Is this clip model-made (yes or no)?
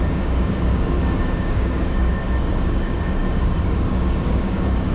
yes